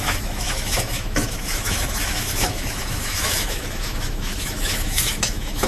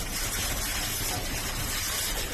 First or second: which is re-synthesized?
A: first